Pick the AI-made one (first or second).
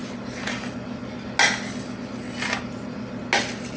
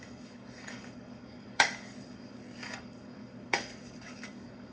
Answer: second